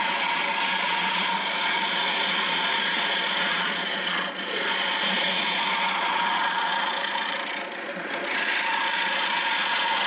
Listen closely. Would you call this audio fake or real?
fake